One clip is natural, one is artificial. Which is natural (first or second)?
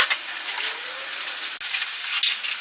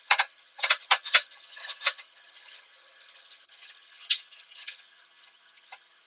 first